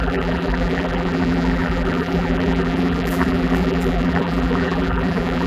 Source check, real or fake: fake